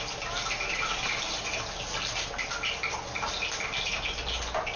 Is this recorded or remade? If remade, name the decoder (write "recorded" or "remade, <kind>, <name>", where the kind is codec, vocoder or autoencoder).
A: recorded